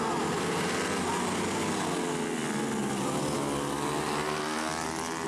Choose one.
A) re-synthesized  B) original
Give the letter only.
B